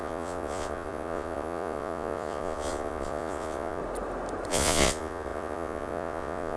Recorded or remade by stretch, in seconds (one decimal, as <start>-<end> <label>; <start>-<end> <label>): 0.0-3.8 remade; 3.8-4.5 recorded; 4.5-6.6 remade